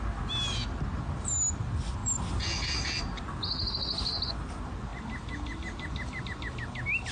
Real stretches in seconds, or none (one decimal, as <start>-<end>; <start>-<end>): 0.0-7.1